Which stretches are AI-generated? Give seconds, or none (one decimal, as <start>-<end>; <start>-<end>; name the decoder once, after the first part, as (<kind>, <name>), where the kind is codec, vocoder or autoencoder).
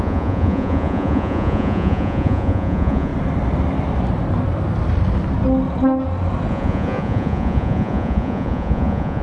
0.0-3.1 (vocoder, Vocos); 6.5-9.2